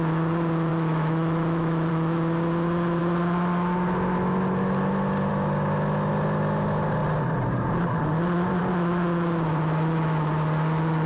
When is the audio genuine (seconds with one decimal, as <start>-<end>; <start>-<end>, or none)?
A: 0.0-0.7; 1.9-11.1

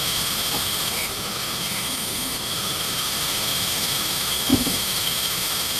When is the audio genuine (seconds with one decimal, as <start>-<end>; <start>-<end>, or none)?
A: none

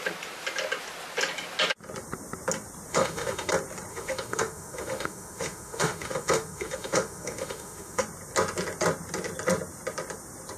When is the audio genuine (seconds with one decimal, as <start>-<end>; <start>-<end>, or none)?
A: 0.0-2.9; 3.5-3.9; 8.0-10.6

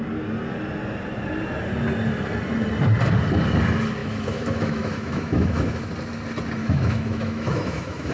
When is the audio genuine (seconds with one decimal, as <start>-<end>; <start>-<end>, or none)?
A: 0.0-4.0; 5.8-6.6

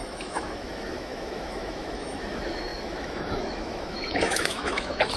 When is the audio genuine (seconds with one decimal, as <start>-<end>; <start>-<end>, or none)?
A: none